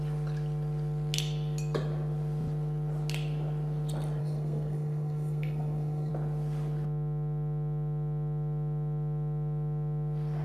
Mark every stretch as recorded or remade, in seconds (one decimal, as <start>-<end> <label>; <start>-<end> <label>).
0.0-4.2 recorded; 4.2-6.1 remade; 6.1-10.4 recorded